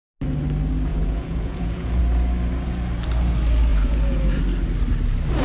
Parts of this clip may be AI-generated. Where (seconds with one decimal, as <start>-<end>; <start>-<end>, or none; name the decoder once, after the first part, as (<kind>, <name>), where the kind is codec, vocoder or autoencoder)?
0.9-2.0 (vocoder, Vocos); 3.7-4.4

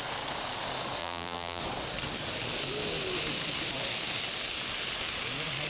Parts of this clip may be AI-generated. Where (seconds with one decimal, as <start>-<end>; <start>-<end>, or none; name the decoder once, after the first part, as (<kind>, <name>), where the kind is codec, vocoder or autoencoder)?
1.0-1.6 (vocoder, BigVGAN v2)

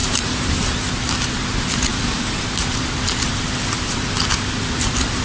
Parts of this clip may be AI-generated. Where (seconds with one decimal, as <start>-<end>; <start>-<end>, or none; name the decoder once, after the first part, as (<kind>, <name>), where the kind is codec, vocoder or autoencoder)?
0.0-0.5 (vocoder, BigVGAN v2); 1.9-2.4

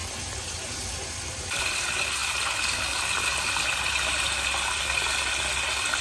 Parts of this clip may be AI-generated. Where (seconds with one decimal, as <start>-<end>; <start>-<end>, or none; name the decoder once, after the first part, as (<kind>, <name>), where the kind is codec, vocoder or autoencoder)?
none

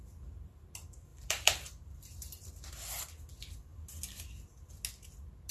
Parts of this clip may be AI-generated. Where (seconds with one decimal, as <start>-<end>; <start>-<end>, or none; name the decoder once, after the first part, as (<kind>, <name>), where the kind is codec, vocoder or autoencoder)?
1.1-2.5 (vocoder, BigVGAN v2)

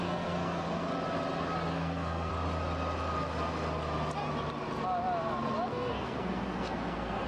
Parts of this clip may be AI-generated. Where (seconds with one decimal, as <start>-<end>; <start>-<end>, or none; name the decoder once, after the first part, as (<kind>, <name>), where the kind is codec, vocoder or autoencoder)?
0.0-0.9 (codec, SNAC); 1.7-2.3; 5.7-7.3